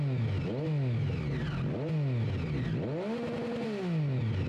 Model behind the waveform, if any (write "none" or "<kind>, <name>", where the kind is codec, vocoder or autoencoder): none